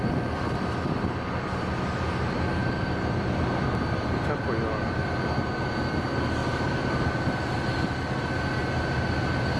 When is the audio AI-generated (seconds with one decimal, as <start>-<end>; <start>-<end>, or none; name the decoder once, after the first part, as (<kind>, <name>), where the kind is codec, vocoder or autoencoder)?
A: 2.6-3.2 (vocoder, BigVGAN v2); 6.4-7.4